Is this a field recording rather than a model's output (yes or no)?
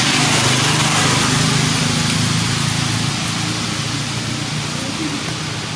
yes